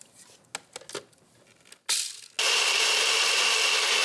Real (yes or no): yes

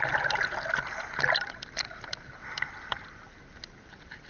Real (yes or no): yes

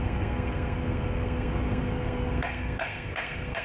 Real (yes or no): no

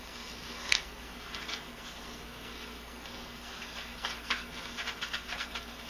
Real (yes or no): no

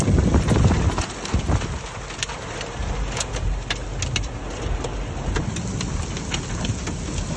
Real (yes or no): yes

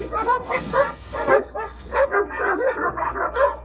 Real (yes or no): no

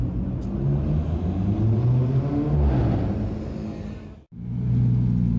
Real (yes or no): yes